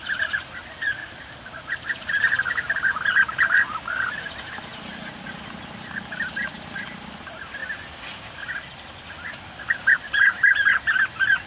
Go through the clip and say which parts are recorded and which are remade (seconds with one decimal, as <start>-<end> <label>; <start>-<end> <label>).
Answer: 0.0-11.5 recorded